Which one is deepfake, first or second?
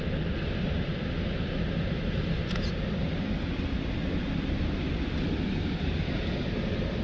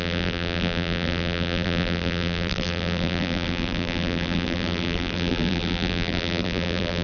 second